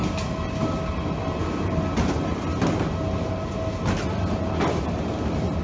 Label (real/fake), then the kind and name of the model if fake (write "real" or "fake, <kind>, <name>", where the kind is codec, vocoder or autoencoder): real